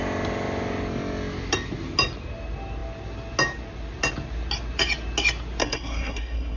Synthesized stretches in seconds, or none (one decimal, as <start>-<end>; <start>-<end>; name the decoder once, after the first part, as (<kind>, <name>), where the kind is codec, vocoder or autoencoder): 5.6-6.6 (codec, SNAC)